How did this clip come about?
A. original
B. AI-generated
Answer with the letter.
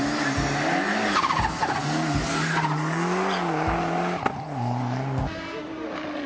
A